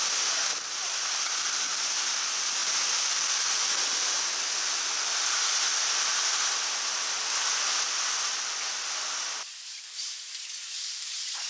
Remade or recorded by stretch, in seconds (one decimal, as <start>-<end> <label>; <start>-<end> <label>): 0.0-11.5 recorded